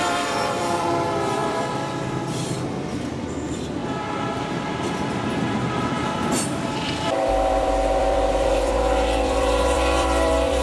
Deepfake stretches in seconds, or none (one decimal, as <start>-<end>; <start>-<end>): 0.0-3.8; 4.9-10.6